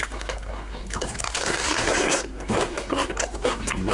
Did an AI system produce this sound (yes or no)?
yes